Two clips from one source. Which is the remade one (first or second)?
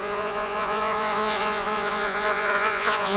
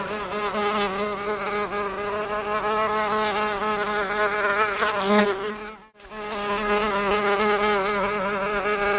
first